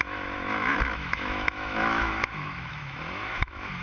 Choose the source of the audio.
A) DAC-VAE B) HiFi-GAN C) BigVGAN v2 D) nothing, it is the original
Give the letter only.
A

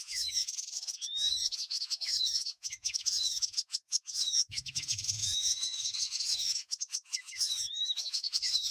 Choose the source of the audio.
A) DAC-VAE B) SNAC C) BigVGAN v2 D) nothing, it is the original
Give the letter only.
A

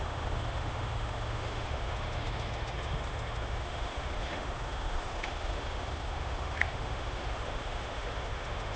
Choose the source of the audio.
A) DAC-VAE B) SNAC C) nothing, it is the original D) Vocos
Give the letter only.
A